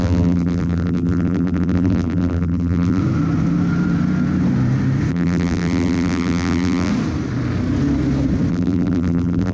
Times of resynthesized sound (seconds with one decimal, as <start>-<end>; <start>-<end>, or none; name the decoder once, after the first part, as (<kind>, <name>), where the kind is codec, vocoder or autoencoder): 0.0-3.0 (vocoder, BigVGAN v2); 5.1-6.9; 8.5-9.5